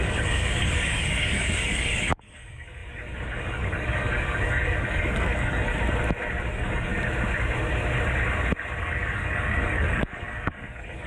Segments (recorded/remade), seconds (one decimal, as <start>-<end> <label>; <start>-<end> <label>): 0.0-5.8 remade; 5.8-6.5 recorded; 6.5-6.9 remade; 6.9-8.8 recorded; 8.8-11.1 remade